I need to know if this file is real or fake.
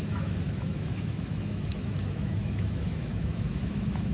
fake